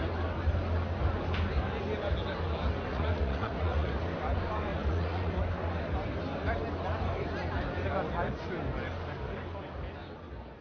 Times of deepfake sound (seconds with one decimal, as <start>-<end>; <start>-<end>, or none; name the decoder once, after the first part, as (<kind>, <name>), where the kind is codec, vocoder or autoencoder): 2.9-3.9 (vocoder, Vocos); 4.7-5.3